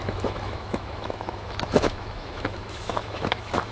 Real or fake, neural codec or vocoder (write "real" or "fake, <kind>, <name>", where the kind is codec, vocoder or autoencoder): fake, autoencoder, DAC-VAE